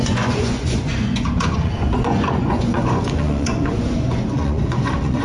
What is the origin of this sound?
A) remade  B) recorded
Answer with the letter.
A